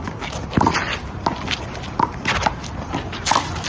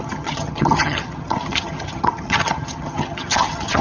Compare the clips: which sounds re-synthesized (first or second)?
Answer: second